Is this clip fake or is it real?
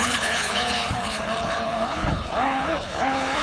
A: fake